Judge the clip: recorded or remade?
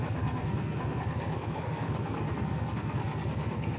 remade